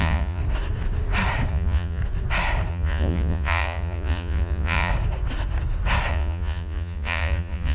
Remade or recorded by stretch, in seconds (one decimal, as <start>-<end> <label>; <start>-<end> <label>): 0.0-0.4 remade; 0.4-1.5 recorded; 1.5-2.0 remade; 2.0-2.7 recorded; 2.7-4.9 remade; 4.9-6.1 recorded; 6.1-7.7 remade